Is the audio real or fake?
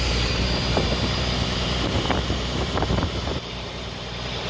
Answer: fake